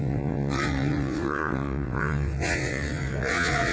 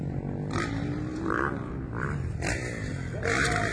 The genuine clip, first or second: second